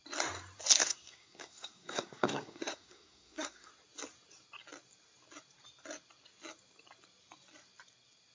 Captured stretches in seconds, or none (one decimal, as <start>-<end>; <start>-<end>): 0.0-0.8; 3.7-8.3